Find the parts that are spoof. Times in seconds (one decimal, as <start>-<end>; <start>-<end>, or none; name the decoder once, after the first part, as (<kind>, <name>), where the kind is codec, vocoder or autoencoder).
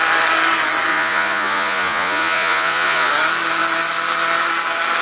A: 0.9-3.1 (vocoder, Vocos)